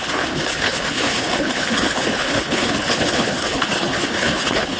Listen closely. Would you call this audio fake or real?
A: fake